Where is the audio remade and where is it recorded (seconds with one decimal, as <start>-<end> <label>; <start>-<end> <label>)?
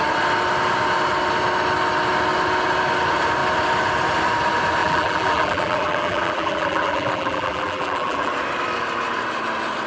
0.0-4.8 recorded; 4.8-8.3 remade; 8.3-9.9 recorded